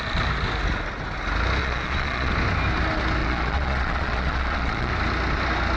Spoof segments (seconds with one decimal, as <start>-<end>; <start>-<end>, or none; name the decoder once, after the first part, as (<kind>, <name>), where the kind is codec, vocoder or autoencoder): 1.6-2.3 (vocoder, Vocos); 3.2-4.9